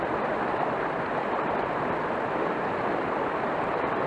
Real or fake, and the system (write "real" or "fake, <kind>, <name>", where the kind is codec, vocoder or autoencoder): fake, vocoder, BigVGAN v2